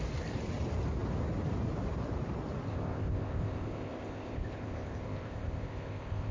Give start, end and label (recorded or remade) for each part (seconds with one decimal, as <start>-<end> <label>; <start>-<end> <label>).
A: 0.0-2.7 recorded; 2.7-6.3 remade